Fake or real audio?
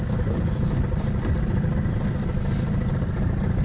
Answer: real